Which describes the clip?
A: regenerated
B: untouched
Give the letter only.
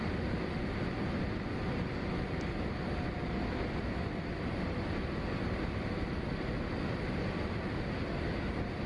B